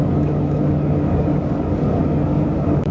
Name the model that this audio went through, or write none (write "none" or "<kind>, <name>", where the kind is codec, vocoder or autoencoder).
codec, DAC